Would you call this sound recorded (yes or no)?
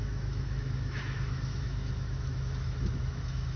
no